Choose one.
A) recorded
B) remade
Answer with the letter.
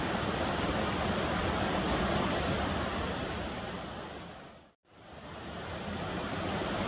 B